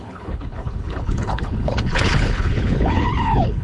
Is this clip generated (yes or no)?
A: yes